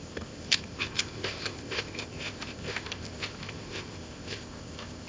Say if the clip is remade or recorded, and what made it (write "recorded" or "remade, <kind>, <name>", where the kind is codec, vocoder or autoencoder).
remade, codec, ZipCodec